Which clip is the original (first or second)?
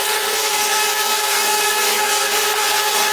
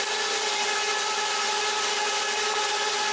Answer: second